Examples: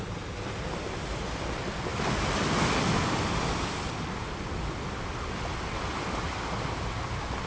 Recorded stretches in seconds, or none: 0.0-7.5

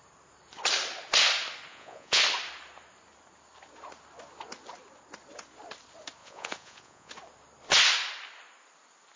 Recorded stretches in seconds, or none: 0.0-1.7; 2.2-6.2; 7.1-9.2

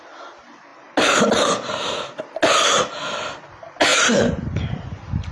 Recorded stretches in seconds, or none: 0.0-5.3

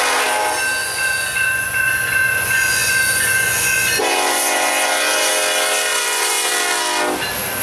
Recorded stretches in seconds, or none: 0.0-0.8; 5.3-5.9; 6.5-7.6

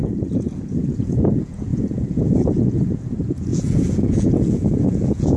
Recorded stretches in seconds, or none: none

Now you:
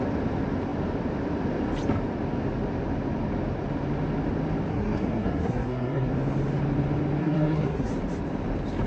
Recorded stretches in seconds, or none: 0.0-4.7; 6.1-7.2; 7.9-8.9

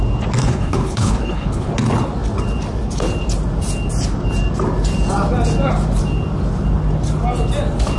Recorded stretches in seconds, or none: 0.0-0.4; 1.7-8.0

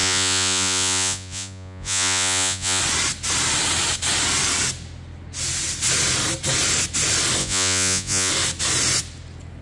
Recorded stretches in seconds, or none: 2.8-7.4; 8.3-9.6